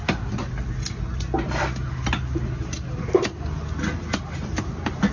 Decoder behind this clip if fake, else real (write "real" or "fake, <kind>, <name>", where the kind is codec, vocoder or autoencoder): real